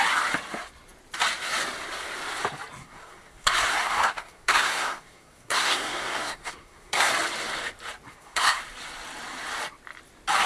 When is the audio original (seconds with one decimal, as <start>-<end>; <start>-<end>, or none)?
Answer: 0.0-2.8; 7.1-8.1; 8.6-10.5